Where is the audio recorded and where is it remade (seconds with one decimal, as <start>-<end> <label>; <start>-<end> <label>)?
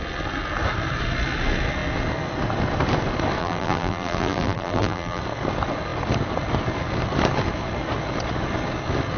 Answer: 0.0-3.4 recorded; 3.4-5.2 remade; 5.2-9.2 recorded